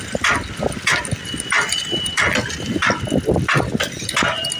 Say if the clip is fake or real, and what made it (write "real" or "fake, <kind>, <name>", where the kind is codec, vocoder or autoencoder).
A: real